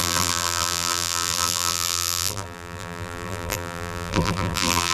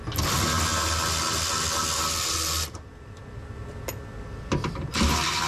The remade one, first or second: first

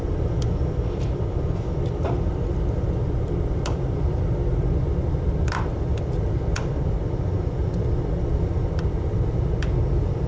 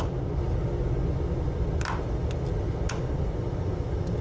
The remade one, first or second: first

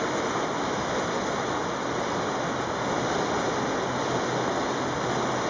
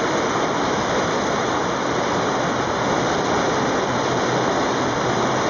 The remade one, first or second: second